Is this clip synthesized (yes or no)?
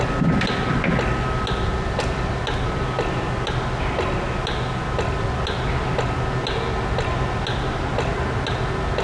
no